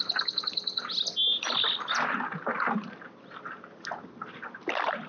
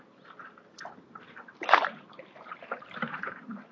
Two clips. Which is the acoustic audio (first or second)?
first